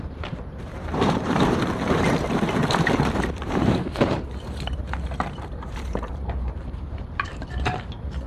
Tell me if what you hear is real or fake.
fake